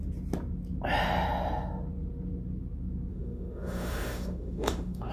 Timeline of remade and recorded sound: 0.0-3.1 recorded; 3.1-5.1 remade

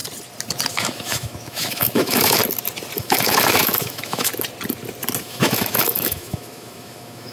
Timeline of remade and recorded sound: 0.0-0.7 recorded; 0.7-2.4 remade; 2.4-3.0 recorded; 3.0-4.3 remade; 4.3-5.2 recorded; 5.2-7.3 remade

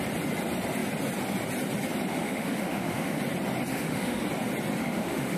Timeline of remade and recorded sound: 0.0-2.1 recorded; 2.1-3.2 remade; 3.2-3.7 recorded; 3.7-4.2 remade; 4.2-4.8 recorded; 4.8-5.4 remade

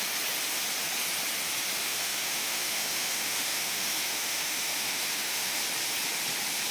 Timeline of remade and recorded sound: 0.0-1.8 recorded; 1.8-5.6 remade; 5.6-6.7 recorded

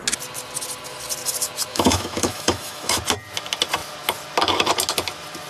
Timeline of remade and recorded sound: 0.0-1.7 recorded; 1.7-3.0 remade; 3.0-5.5 recorded

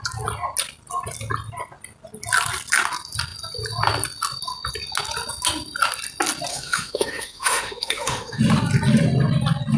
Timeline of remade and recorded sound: 0.0-6.5 recorded; 6.5-8.4 remade; 8.4-9.8 recorded

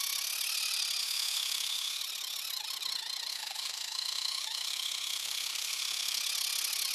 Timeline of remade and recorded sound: 0.0-1.0 recorded; 1.0-2.0 remade; 2.0-3.3 recorded; 3.3-6.2 remade; 6.2-6.9 recorded

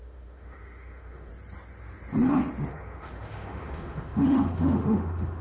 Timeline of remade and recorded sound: 0.0-1.3 remade; 1.3-2.7 recorded; 2.7-5.4 remade